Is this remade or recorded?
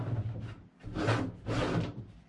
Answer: recorded